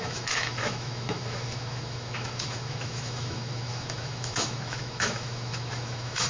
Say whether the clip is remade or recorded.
remade